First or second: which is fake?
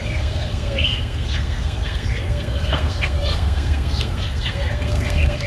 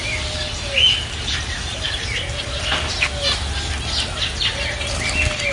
first